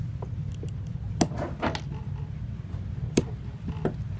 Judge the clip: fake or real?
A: real